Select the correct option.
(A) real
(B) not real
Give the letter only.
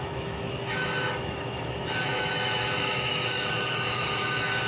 B